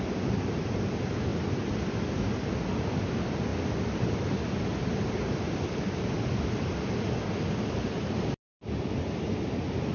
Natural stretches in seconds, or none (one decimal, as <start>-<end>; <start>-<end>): 0.0-1.3; 2.1-3.5; 4.3-4.7; 7.4-9.9